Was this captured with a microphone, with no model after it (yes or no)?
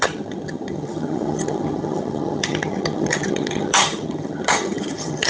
no